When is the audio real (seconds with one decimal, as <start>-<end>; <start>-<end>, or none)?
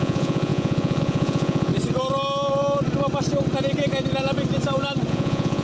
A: 1.7-5.1